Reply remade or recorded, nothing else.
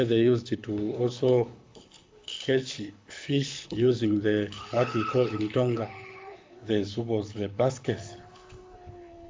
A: remade